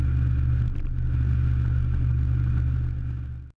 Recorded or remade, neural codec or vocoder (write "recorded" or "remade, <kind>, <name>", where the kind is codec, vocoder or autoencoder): recorded